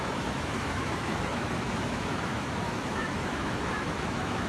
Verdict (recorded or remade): remade